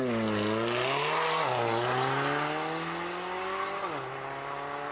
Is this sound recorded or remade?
recorded